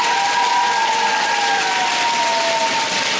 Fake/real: real